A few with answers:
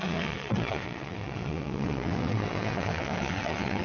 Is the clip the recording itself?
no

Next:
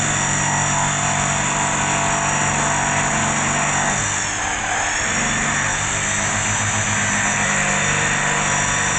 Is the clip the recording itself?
yes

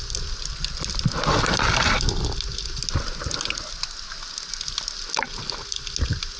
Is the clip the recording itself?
yes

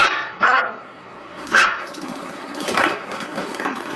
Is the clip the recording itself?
no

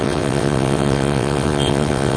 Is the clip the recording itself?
no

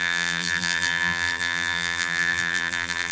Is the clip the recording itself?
no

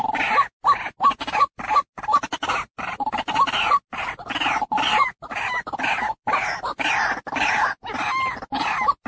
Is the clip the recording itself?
yes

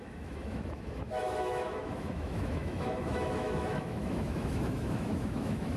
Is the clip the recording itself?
no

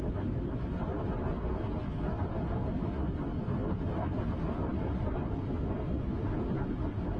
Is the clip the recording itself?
yes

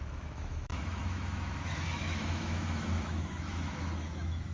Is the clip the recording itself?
no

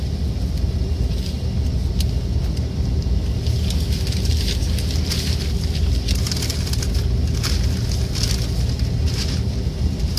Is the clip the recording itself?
yes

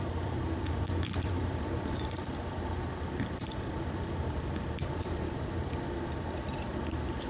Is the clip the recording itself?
no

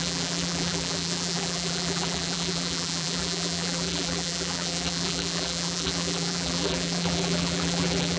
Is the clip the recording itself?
no